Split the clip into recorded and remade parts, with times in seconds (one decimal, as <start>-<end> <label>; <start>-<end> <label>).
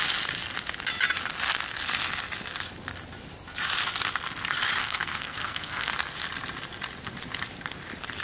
0.0-4.8 recorded; 4.8-5.9 remade; 5.9-8.2 recorded